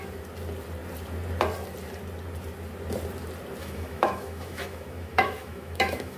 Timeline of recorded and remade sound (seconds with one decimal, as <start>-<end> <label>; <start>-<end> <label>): 0.0-3.6 recorded; 3.6-6.2 remade